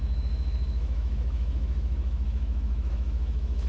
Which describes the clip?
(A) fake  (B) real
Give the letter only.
A